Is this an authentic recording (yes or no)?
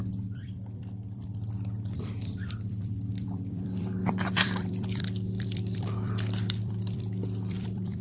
no